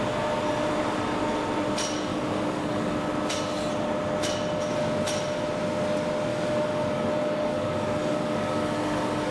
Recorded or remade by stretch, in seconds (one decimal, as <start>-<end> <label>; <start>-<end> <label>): 0.0-2.1 recorded; 2.1-3.0 remade; 3.0-6.3 recorded; 6.3-9.3 remade